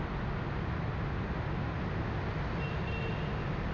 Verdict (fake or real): real